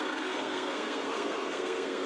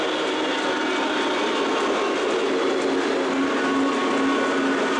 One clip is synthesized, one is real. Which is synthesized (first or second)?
first